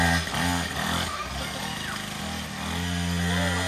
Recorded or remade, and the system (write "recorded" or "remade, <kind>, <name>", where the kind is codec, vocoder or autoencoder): recorded